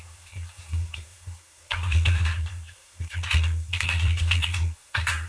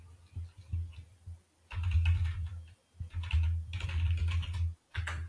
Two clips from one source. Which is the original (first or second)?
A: second